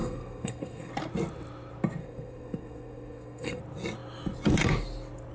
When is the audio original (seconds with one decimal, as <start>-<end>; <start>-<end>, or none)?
0.9-2.0; 3.6-5.3